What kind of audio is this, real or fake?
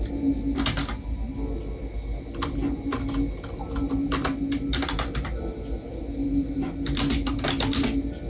real